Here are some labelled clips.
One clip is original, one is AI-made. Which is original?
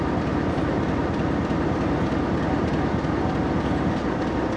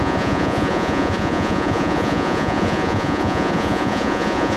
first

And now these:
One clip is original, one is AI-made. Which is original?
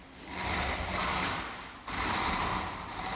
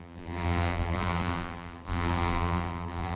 first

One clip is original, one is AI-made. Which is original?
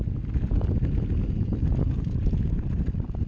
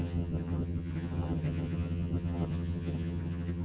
first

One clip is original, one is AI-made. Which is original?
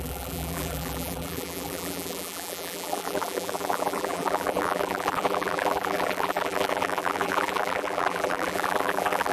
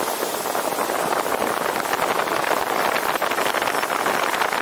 second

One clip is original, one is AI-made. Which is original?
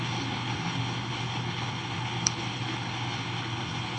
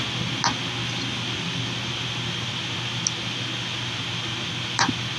second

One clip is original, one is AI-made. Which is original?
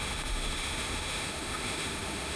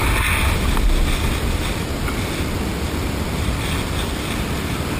second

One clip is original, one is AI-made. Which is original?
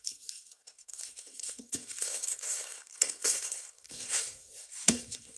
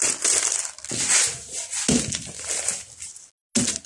second